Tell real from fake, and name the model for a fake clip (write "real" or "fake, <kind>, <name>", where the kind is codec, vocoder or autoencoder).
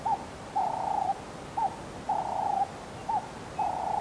real